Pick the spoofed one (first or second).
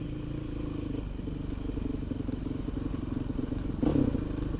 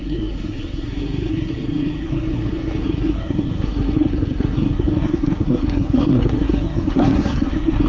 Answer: second